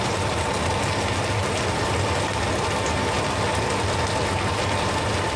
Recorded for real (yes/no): yes